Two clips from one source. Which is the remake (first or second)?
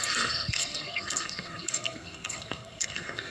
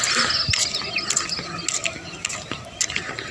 first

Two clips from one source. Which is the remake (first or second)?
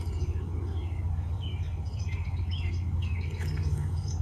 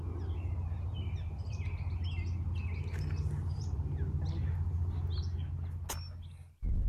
first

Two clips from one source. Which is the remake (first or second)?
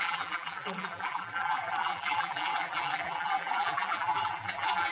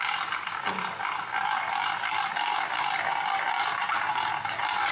first